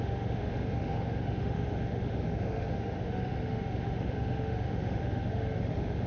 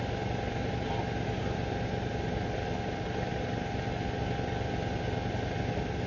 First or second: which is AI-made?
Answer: first